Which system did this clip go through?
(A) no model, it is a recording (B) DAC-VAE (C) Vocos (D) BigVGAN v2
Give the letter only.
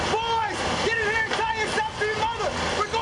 A